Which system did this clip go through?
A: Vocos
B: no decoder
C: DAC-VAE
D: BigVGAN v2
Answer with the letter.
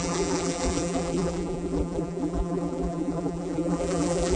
D